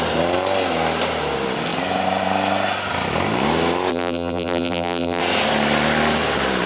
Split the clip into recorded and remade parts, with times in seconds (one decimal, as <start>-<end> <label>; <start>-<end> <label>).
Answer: 0.0-3.9 recorded; 3.9-5.2 remade; 5.2-6.7 recorded